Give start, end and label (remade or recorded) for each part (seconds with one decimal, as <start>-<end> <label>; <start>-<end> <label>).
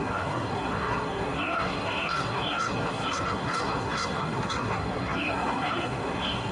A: 0.0-6.5 remade